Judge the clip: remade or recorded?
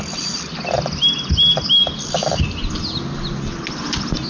recorded